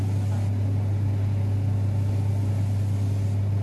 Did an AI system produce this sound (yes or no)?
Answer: no